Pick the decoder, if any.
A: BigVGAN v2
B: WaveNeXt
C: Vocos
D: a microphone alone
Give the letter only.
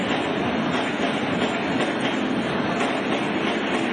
D